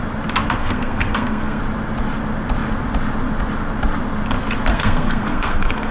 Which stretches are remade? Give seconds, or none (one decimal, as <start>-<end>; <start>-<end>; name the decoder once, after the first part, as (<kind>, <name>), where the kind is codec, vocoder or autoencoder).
0.6-1.6 (codec, SNAC); 4.7-5.9